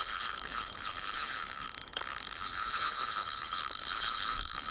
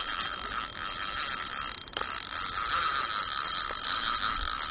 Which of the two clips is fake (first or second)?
first